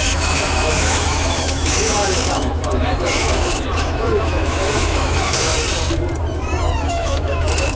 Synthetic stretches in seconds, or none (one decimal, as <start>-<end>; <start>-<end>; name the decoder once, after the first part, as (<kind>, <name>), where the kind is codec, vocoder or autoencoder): 0.0-5.5 (autoencoder, DAC-VAE); 6.8-7.8